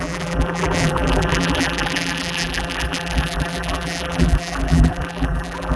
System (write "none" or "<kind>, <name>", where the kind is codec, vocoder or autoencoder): vocoder, BigVGAN v2